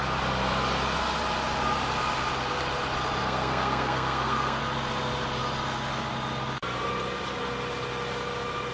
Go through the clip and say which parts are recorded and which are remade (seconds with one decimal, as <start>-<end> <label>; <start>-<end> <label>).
0.0-3.2 recorded; 3.2-4.6 remade; 4.6-8.7 recorded